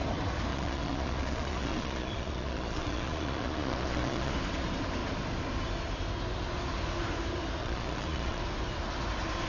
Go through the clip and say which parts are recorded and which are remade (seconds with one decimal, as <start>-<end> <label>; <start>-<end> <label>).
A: 0.0-0.5 recorded; 0.5-4.3 remade; 4.3-7.6 recorded; 7.6-8.4 remade; 8.4-9.5 recorded